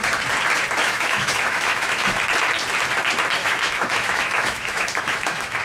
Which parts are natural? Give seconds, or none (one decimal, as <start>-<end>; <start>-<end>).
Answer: 0.0-0.8; 2.2-3.4